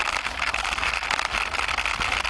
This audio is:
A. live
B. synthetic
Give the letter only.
A